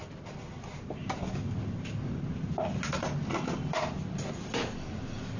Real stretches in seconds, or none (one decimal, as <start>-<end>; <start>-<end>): 0.0-5.4